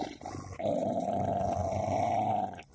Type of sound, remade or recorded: recorded